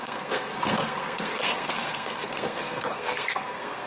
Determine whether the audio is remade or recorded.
remade